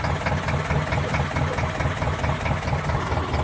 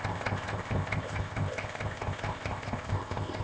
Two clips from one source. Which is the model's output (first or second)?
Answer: second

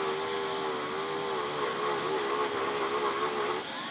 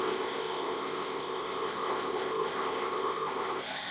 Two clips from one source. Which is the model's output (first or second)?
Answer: second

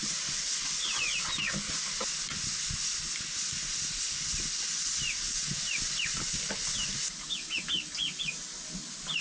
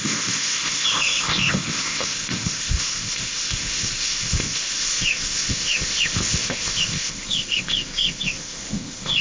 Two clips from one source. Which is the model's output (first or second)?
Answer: second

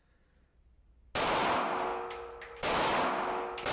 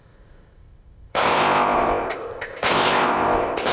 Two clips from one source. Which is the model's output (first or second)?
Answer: second